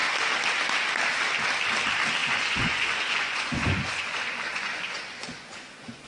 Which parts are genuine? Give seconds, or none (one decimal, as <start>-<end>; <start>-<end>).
0.0-2.2